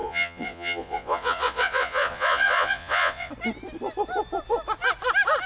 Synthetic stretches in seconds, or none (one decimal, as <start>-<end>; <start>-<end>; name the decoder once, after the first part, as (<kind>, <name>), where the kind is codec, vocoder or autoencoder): 0.0-3.3 (vocoder, Vocos)